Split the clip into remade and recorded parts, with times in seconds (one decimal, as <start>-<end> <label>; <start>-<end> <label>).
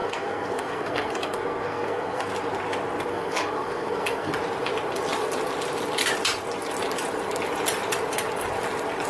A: 0.0-2.3 remade; 2.3-3.1 recorded; 3.1-4.3 remade; 4.3-9.1 recorded